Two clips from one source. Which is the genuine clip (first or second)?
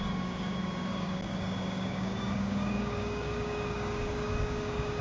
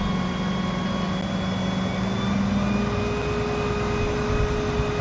second